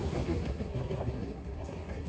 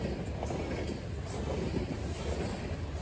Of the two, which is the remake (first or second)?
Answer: first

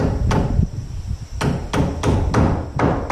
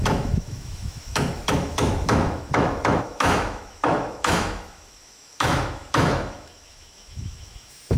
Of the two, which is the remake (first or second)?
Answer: second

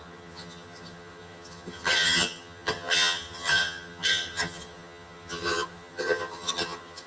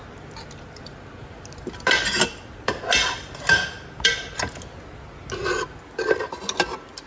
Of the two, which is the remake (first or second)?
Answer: first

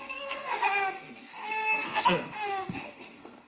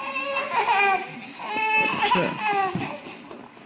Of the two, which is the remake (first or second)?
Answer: first